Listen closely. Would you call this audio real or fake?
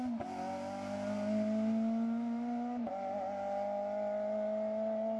real